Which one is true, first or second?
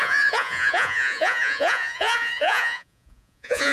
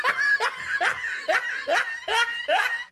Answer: second